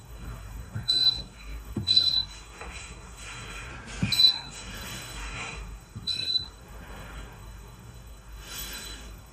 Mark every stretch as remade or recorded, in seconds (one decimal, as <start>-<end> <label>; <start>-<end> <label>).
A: 0.0-3.7 remade; 3.7-4.2 recorded; 4.2-9.3 remade